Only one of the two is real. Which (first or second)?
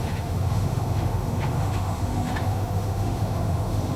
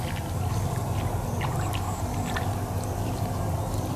second